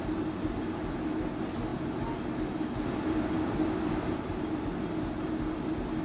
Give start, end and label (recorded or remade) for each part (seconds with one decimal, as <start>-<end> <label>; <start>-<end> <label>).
0.0-6.0 recorded